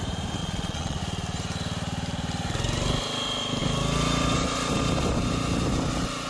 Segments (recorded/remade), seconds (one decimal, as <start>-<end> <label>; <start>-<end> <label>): 0.0-0.4 recorded; 0.4-1.0 remade; 1.0-6.3 recorded